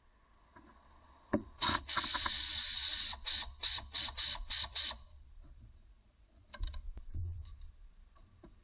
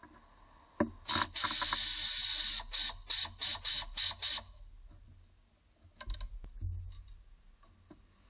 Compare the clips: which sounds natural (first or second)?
second